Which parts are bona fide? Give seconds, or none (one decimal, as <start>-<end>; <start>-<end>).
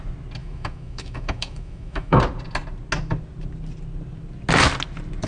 0.0-0.4; 2.2-5.3